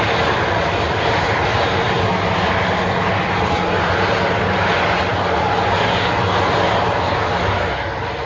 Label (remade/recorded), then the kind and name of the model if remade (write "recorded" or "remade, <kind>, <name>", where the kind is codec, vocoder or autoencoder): recorded